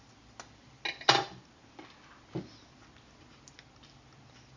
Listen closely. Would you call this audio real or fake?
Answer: real